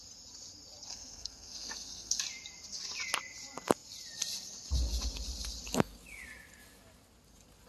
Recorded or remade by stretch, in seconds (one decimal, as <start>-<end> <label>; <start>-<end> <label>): 0.0-0.9 recorded; 0.9-2.2 remade; 2.2-7.7 recorded